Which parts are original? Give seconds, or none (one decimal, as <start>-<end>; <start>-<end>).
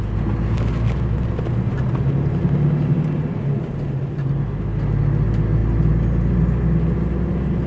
0.0-7.7